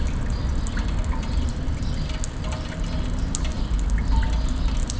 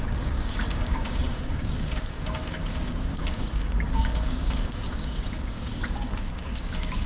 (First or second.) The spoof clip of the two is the second